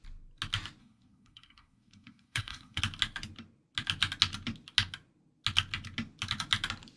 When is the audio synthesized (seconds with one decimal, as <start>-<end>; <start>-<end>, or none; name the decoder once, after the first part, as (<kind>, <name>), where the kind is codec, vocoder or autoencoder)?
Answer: 0.8-2.8 (codec, SNAC)